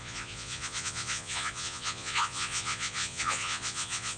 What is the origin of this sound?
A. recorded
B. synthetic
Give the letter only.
B